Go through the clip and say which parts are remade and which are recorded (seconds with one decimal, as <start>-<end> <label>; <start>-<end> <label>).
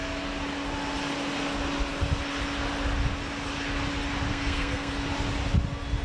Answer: 0.0-4.3 recorded; 4.3-4.9 remade; 4.9-6.0 recorded